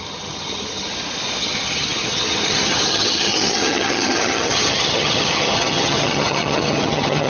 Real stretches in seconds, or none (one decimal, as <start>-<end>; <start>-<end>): 0.9-1.4